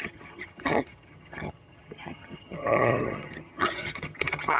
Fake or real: fake